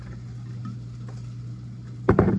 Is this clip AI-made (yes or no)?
no